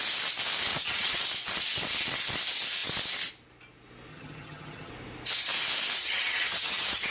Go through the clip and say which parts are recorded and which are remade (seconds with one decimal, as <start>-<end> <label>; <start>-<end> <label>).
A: 0.0-0.7 recorded; 0.7-1.2 remade; 1.2-4.1 recorded; 4.1-4.9 remade; 4.9-6.0 recorded; 6.0-7.1 remade